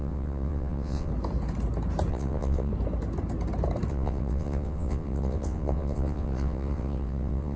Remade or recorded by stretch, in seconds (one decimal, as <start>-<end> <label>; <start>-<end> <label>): 0.0-1.1 remade; 1.1-2.1 recorded; 2.1-2.7 remade; 2.7-3.9 recorded; 3.9-7.6 remade